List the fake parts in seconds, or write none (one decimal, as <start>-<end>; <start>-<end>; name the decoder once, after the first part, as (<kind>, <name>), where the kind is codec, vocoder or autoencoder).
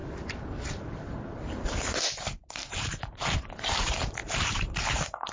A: 0.0-2.0 (vocoder, BigVGAN v2); 2.6-3.4; 4.2-4.8